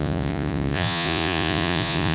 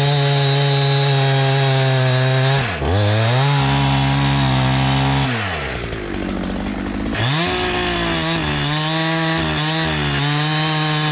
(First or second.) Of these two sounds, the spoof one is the first